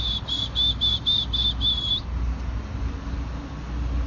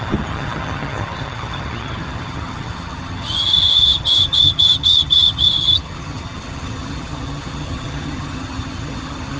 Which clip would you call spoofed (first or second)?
second